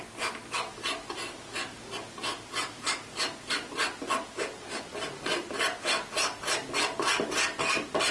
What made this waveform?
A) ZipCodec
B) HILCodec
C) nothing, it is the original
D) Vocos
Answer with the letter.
C